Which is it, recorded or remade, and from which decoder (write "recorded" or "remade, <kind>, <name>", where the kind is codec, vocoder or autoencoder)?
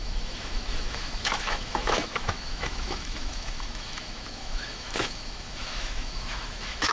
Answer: remade, autoencoder, DAC-VAE